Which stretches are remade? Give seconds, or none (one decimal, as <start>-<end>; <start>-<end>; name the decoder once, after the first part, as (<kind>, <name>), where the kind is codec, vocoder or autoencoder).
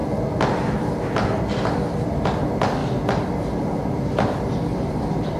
4.7-5.4 (vocoder, BigVGAN v2)